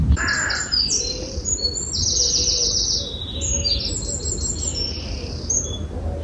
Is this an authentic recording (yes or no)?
yes